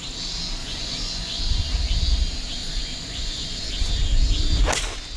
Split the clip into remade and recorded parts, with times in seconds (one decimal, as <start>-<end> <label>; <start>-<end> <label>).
0.0-0.6 recorded; 0.6-1.4 remade; 1.4-2.6 recorded; 2.6-3.7 remade; 3.7-5.2 recorded